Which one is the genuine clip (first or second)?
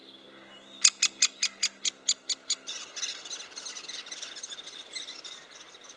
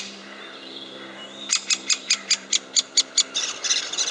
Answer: first